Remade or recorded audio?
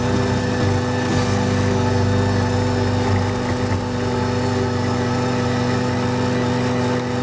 recorded